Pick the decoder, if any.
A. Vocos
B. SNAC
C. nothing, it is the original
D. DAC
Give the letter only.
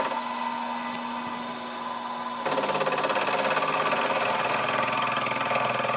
C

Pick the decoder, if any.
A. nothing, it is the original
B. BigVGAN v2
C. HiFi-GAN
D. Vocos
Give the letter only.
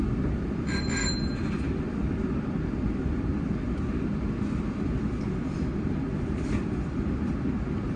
B